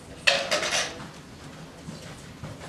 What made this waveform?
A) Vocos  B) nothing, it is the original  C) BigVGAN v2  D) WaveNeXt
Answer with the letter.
B